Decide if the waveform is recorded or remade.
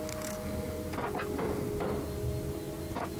recorded